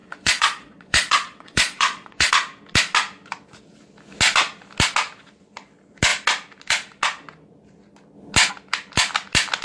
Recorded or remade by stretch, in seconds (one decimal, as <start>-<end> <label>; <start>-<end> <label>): 0.0-2.3 remade; 2.3-9.6 recorded